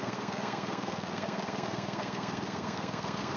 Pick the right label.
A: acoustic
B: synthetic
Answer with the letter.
B